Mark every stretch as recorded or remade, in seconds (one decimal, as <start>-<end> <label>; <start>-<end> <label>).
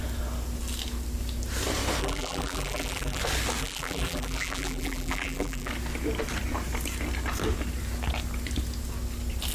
0.0-2.0 recorded; 2.0-3.2 remade; 3.2-3.6 recorded; 3.6-5.7 remade; 5.7-9.5 recorded